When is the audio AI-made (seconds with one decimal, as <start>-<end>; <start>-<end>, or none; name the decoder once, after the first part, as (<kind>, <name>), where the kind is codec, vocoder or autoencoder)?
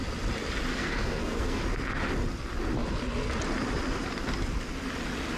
0.7-1.6 (codec, SNAC)